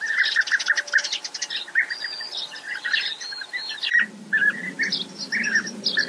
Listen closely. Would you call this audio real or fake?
real